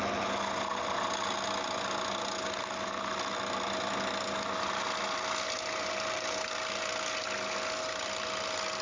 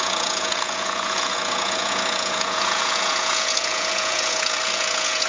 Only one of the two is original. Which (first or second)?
first